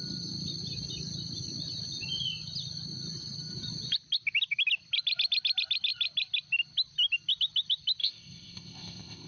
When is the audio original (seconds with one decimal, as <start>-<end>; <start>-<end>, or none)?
0.0-8.0